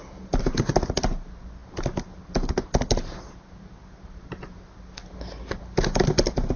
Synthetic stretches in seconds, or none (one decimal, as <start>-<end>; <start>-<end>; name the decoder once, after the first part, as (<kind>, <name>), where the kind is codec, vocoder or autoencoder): 0.0-0.7 (vocoder, BigVGAN v2)